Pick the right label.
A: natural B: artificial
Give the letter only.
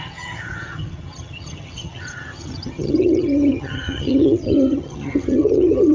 B